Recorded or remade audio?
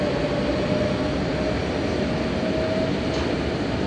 recorded